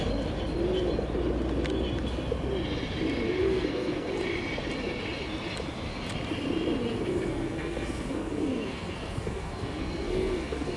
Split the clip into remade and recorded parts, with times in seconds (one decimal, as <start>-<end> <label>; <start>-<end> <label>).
0.0-3.4 recorded; 3.4-4.1 remade; 4.1-7.1 recorded; 7.1-10.8 remade